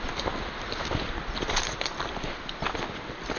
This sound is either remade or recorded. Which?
recorded